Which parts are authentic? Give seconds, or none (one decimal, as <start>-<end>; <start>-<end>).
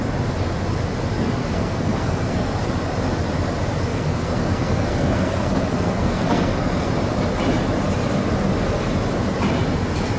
0.0-1.4; 2.5-3.9; 6.9-10.2